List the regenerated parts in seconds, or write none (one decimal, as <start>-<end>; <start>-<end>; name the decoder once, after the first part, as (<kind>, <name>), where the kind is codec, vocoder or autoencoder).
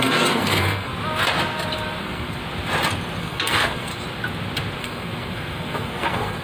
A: 0.0-0.9 (codec, SNAC); 2.0-2.4; 3.2-3.9; 4.8-6.4